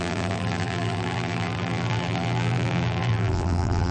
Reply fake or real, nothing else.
fake